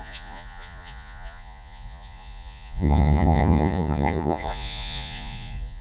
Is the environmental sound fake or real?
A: fake